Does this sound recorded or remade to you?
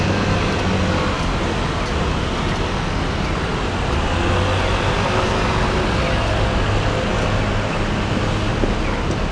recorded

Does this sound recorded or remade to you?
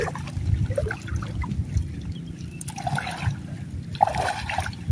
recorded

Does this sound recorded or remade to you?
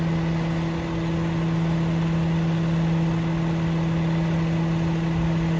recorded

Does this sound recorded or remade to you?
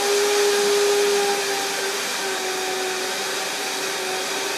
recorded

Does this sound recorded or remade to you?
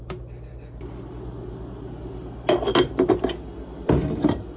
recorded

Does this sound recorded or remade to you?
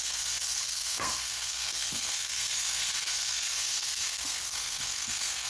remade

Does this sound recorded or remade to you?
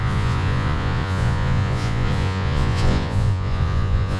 remade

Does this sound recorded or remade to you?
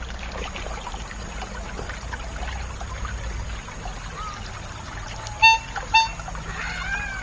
recorded